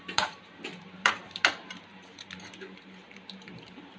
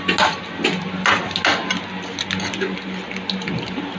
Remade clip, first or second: first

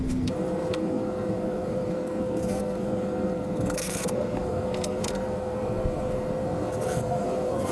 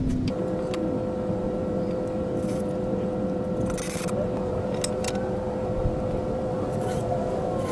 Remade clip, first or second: first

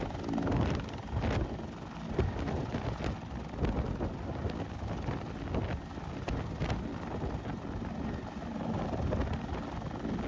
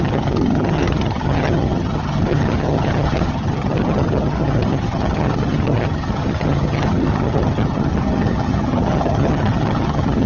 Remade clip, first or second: second